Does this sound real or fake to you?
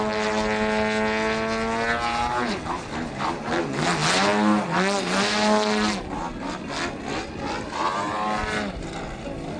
real